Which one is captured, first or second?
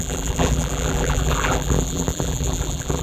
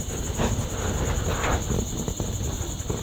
second